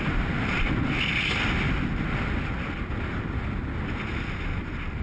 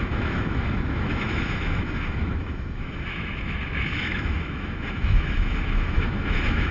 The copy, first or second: second